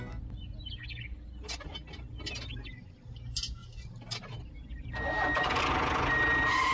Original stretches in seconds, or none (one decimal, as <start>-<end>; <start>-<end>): 0.0-6.7

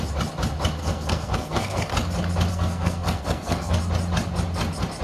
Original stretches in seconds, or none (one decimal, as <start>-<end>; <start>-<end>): 0.0-0.8; 1.9-2.5; 3.8-5.0